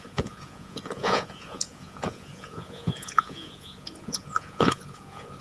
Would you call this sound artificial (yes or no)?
yes